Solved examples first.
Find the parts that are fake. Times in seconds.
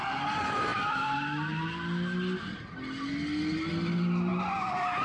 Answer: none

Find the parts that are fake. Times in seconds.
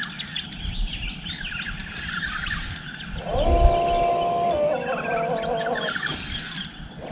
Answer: none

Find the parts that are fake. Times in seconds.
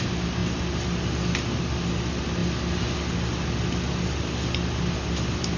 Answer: none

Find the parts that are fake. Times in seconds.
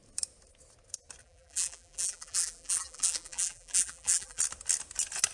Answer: 1.2-4.4 (vocoder, BigVGAN v2)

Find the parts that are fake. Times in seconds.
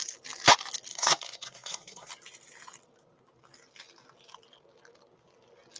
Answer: 0.9-2.1 (codec, SNAC)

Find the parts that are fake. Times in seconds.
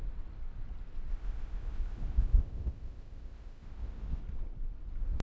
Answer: 1.1-4.2 (codec, ZipCodec)